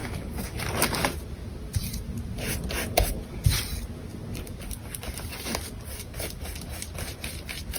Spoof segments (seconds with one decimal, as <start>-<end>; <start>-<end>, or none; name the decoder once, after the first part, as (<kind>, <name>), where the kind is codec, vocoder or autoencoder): 0.0-0.6 (autoencoder, DAC-VAE)